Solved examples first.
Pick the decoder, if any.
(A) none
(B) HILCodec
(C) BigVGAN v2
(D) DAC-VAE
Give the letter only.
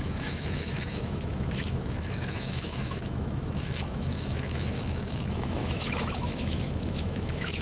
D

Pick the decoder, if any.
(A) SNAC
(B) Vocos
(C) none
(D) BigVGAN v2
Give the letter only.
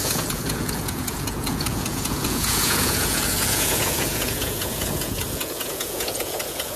B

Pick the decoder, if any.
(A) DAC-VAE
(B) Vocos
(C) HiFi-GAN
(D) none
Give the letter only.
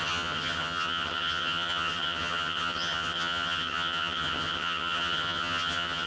C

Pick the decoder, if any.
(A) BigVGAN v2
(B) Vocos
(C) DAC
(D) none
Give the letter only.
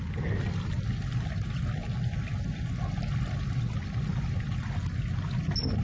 D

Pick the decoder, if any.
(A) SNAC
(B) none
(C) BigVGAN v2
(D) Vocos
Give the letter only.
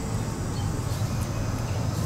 B